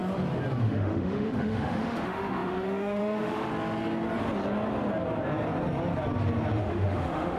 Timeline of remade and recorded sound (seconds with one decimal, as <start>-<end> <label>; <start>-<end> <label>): 0.0-0.6 recorded; 0.6-3.5 remade; 3.5-6.6 recorded; 6.6-7.4 remade

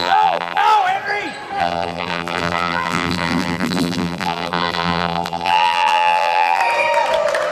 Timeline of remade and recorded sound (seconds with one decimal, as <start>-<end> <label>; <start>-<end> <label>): 0.0-0.6 remade; 0.6-1.6 recorded; 1.6-6.6 remade; 6.6-7.5 recorded

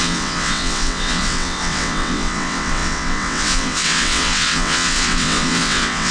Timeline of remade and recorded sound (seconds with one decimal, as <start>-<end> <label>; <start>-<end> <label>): 0.0-6.1 remade

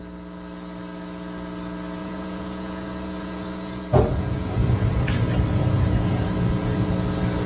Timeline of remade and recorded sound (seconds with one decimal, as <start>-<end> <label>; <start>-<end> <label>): 0.0-2.0 recorded; 2.0-4.9 remade; 4.9-5.6 recorded; 5.6-6.9 remade; 6.9-7.5 recorded

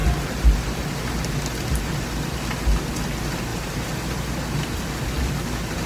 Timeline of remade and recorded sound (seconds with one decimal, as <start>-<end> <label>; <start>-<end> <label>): 0.0-3.5 recorded; 3.5-4.9 remade; 4.9-5.9 recorded

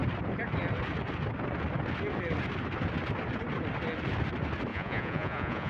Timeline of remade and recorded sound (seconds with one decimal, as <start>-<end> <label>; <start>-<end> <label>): 0.0-4.7 recorded; 4.7-5.7 remade

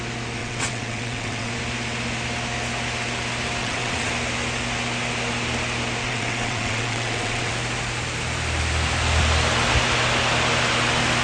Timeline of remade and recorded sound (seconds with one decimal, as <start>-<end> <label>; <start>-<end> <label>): 0.0-0.4 recorded; 0.4-1.5 remade; 1.5-3.6 recorded; 3.6-4.1 remade; 4.1-6.0 recorded; 6.0-7.5 remade; 7.5-11.2 recorded